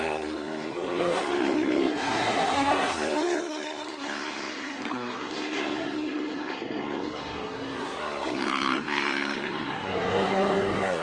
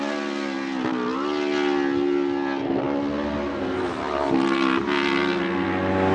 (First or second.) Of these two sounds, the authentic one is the second